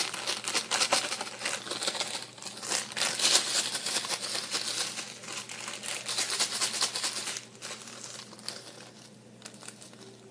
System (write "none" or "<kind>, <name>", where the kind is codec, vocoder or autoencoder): none